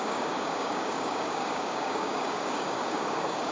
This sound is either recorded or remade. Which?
remade